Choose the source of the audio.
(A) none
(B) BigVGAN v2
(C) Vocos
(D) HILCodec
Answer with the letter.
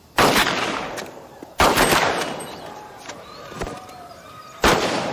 B